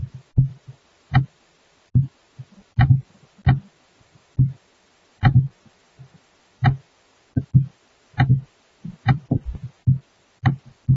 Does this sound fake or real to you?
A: real